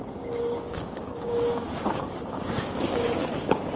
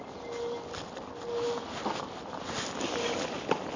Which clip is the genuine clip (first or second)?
second